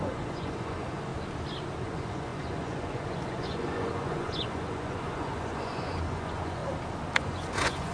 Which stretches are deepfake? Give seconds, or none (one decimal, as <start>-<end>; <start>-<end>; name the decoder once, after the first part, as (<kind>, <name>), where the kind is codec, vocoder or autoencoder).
0.0-1.1 (vocoder, Vocos); 1.8-6.6; 7.2-7.9